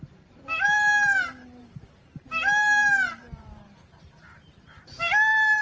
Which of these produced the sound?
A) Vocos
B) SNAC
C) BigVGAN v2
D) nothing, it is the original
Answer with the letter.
C